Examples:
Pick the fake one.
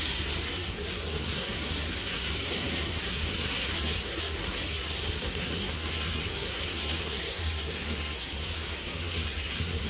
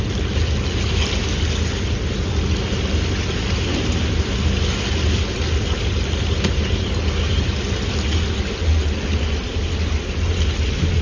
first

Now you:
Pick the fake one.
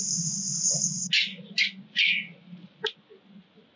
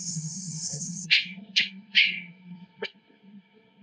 second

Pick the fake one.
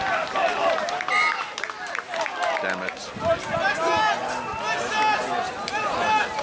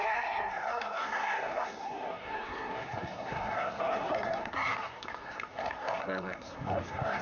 second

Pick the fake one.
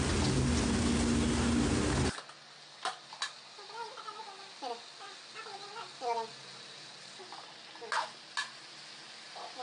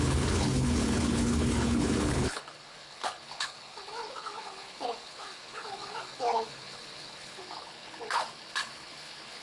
second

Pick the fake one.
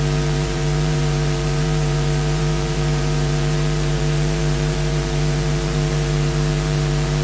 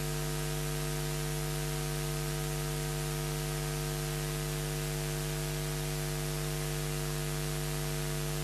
first